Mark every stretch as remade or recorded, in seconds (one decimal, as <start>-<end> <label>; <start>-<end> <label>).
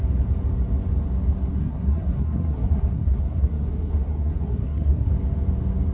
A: 0.0-1.6 recorded; 1.6-5.1 remade; 5.1-5.9 recorded